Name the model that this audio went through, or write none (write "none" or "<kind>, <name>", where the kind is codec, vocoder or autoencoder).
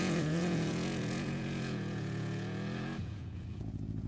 vocoder, Vocos